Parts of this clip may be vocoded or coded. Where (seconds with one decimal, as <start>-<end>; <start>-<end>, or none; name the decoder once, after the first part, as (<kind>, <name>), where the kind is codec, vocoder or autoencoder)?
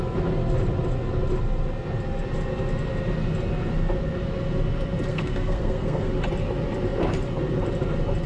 5.1-6.1 (codec, SNAC)